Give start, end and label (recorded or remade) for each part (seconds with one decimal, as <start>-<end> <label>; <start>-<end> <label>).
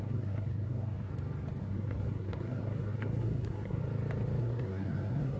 0.0-1.1 remade; 1.1-1.6 recorded; 1.6-3.8 remade; 3.8-4.4 recorded; 4.4-5.4 remade